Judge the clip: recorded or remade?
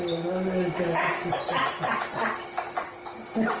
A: recorded